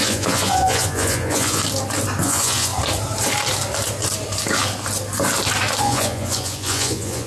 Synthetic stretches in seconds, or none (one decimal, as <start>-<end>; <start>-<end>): 0.0-1.6; 2.2-2.7; 5.8-7.3

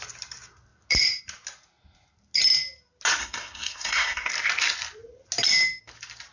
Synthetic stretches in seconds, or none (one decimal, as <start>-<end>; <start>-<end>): 3.2-4.3

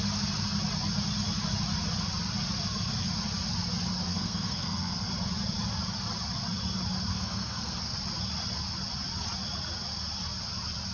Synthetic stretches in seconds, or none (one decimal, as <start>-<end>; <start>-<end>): 4.1-5.1; 7.1-7.8

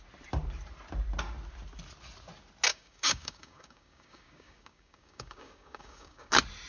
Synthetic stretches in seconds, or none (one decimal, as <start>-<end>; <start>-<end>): 2.7-6.3

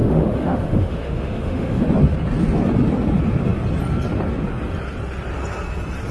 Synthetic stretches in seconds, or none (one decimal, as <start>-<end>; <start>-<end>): 0.0-1.8

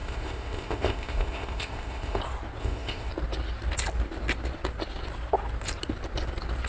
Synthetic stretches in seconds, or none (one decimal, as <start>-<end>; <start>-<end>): 0.0-2.2; 2.6-3.1

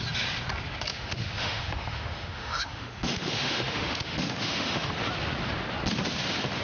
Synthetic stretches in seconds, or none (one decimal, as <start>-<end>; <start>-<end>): 0.9-4.9

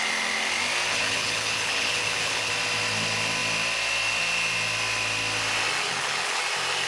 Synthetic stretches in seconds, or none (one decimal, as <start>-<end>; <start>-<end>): 0.9-2.5; 5.8-6.4